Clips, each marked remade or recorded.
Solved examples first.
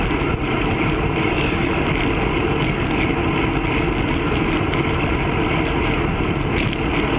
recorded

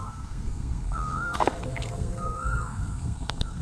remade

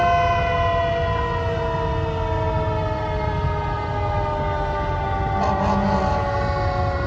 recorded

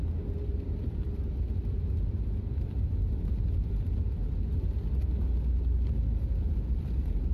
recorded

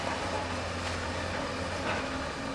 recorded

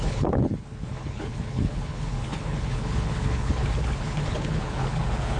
remade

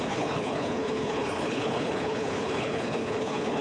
remade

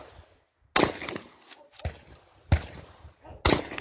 recorded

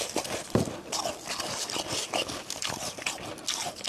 recorded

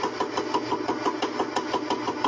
recorded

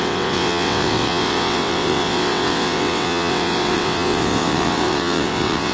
remade